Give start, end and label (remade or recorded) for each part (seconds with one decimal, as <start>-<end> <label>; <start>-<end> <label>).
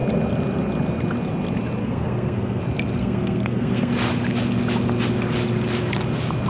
0.0-1.8 recorded; 1.8-2.6 remade; 2.6-3.0 recorded; 3.0-3.9 remade; 3.9-6.5 recorded